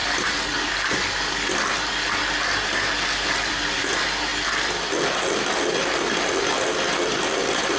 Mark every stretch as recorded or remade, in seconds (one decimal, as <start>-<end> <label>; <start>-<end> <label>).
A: 0.0-7.8 recorded